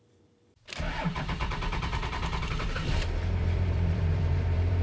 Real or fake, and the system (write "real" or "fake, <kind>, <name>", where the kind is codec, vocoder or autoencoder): fake, vocoder, BigVGAN v2